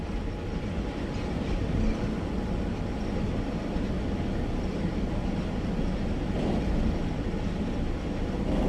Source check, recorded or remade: recorded